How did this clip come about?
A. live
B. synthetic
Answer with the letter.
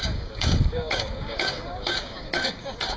B